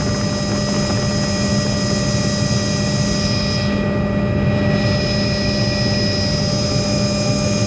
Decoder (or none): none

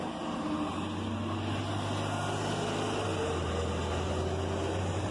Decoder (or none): none